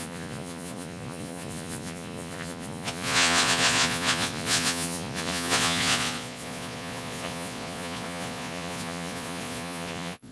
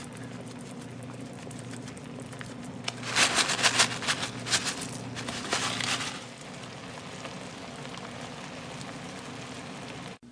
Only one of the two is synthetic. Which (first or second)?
first